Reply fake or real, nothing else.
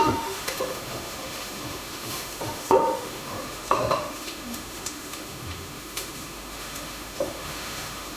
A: fake